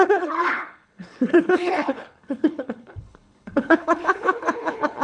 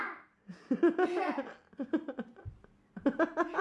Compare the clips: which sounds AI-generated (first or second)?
first